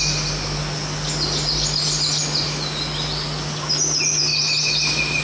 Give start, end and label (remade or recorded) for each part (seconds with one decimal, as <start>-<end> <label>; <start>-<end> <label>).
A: 0.0-5.2 recorded